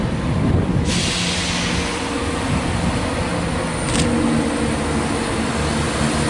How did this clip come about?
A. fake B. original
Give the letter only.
B